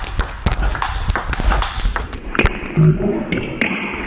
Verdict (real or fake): real